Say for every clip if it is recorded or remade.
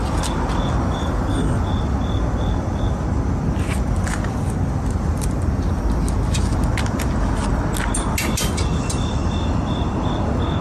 recorded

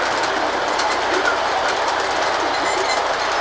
recorded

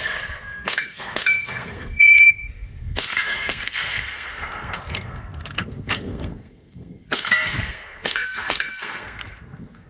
remade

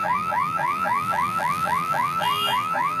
remade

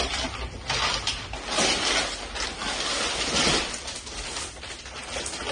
recorded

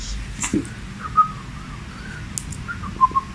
recorded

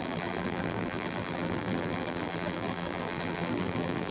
remade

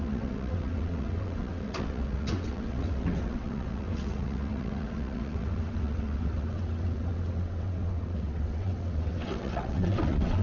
remade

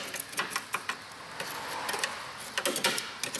recorded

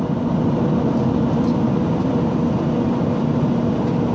recorded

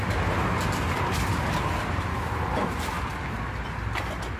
recorded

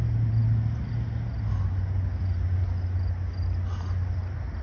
recorded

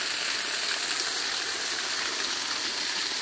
recorded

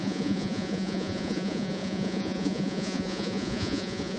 remade